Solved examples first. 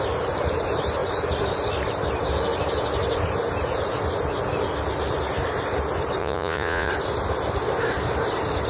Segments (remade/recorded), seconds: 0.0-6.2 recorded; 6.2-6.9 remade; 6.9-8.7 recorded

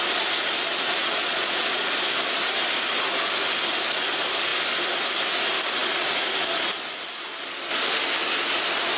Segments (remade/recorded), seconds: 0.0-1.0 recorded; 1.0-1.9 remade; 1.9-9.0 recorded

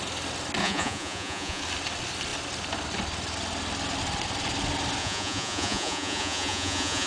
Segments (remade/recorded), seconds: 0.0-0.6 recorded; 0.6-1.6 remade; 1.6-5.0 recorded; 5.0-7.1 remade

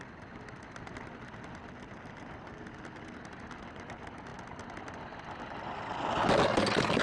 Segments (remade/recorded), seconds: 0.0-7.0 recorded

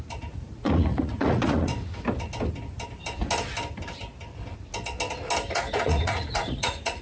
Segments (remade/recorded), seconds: 0.0-1.7 remade; 1.7-5.5 recorded; 5.5-7.0 remade